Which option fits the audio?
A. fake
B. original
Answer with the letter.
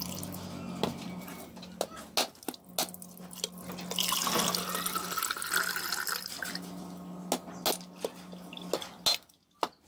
B